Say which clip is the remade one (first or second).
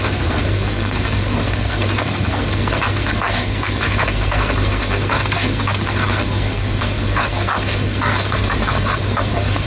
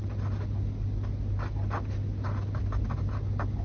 first